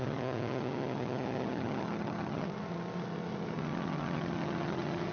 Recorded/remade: remade